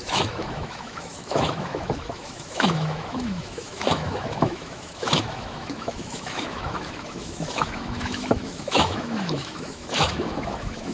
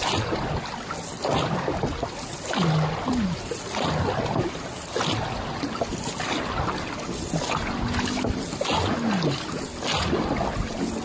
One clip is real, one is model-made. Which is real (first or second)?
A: second